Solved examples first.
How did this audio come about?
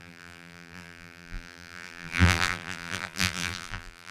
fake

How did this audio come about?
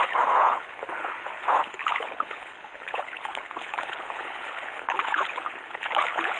fake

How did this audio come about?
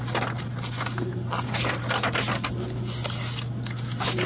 real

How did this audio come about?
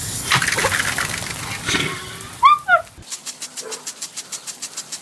real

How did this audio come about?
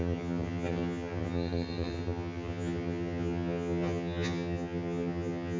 fake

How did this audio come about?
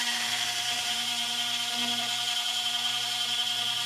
fake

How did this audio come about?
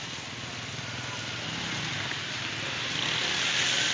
real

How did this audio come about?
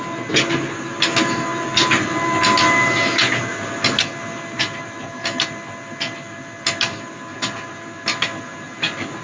real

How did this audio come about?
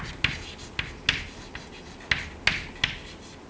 real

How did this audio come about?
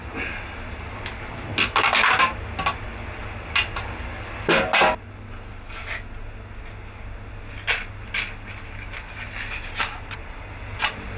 real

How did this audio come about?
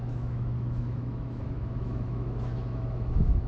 fake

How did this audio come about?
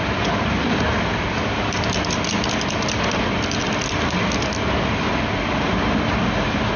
real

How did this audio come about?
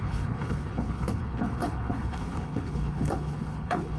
fake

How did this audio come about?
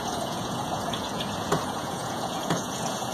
fake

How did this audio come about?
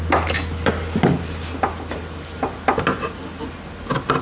real